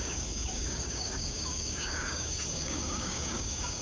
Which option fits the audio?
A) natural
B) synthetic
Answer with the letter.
B